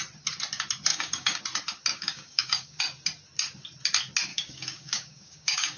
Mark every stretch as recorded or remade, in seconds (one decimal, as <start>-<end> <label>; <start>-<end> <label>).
0.0-0.9 recorded; 0.9-1.4 remade; 1.4-1.9 recorded; 1.9-2.8 remade; 2.8-4.3 recorded; 4.3-5.8 remade